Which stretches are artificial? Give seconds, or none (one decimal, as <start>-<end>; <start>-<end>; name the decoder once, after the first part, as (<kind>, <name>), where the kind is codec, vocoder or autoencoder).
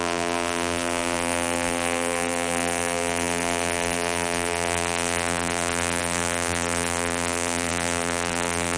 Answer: 0.0-8.8 (vocoder, BigVGAN v2)